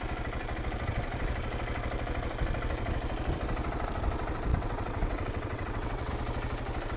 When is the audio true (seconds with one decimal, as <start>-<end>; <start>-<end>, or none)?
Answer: 0.0-4.5; 6.1-7.0